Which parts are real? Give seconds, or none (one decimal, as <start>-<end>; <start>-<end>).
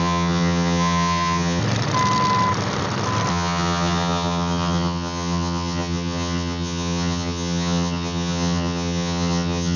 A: 1.6-3.3